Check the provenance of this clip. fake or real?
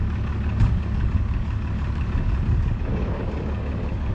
fake